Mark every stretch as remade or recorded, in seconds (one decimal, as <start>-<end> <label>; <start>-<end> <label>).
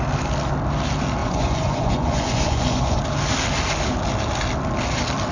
0.0-1.2 recorded; 1.2-3.0 remade; 3.0-5.3 recorded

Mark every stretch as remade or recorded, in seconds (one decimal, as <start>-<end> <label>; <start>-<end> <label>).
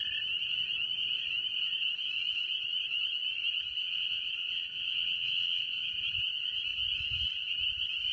0.0-3.8 recorded; 3.8-5.9 remade; 5.9-8.1 recorded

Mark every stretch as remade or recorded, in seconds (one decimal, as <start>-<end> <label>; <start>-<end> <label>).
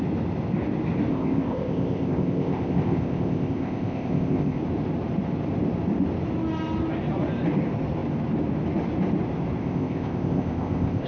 0.0-1.1 recorded; 1.1-4.6 remade; 4.6-9.6 recorded; 9.6-11.1 remade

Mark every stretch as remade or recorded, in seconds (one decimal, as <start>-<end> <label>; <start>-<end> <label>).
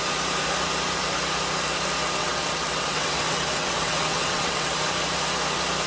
0.0-2.2 recorded; 2.2-4.7 remade; 4.7-5.9 recorded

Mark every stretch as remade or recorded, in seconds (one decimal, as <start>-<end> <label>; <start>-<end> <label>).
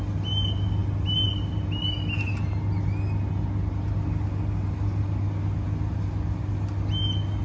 0.0-7.4 recorded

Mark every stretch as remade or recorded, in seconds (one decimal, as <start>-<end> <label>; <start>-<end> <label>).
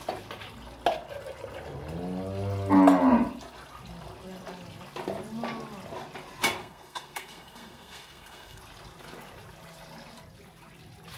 0.0-6.6 recorded; 6.6-8.6 remade; 8.6-11.2 recorded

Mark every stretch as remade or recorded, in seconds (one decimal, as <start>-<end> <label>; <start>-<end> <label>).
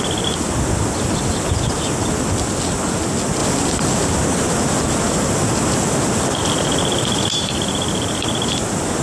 0.0-9.0 recorded